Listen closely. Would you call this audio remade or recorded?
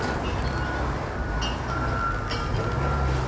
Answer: recorded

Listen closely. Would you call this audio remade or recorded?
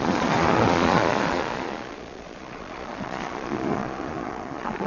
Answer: remade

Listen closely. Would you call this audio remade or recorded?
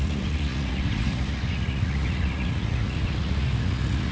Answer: remade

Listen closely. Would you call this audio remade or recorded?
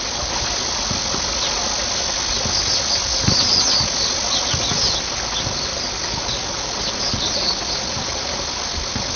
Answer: recorded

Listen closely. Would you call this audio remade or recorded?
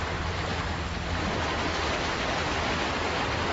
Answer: recorded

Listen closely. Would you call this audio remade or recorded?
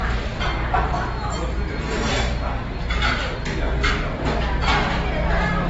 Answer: recorded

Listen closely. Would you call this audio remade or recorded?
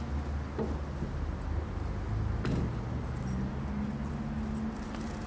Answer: recorded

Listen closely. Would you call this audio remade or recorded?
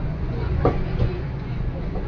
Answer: remade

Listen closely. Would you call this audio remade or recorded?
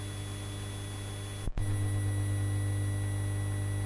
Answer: recorded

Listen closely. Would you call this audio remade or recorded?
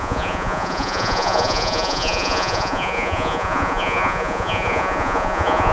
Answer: remade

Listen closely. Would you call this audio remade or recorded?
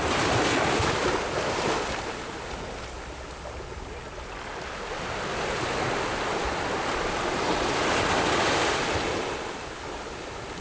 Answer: recorded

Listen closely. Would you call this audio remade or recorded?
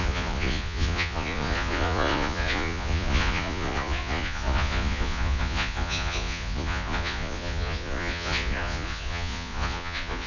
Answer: remade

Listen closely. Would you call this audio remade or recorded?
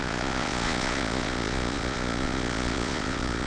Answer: remade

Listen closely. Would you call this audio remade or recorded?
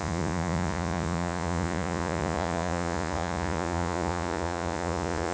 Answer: remade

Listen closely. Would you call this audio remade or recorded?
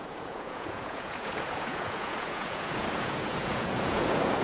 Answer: remade